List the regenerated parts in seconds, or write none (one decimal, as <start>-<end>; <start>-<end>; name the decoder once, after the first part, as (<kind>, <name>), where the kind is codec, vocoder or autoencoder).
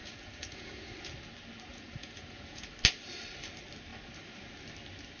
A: 0.0-0.9 (vocoder, Vocos); 1.7-2.7